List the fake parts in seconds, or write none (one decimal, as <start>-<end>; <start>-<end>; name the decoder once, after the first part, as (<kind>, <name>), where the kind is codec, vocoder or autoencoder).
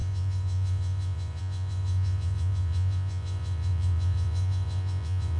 0.0-5.4 (vocoder, Vocos)